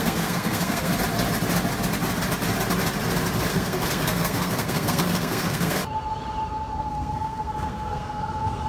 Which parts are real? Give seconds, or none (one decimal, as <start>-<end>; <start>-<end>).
0.9-3.5; 5.8-6.8